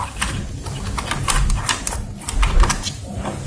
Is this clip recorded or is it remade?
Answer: recorded